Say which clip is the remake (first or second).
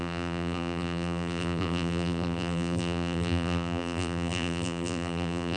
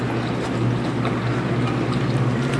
first